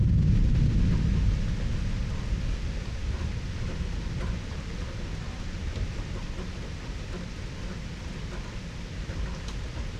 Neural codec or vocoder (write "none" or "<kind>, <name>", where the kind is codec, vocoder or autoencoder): none